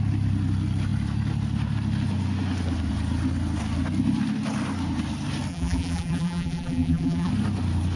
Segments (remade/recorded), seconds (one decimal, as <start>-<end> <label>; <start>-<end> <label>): 0.0-5.5 recorded; 5.5-7.3 remade; 7.3-8.0 recorded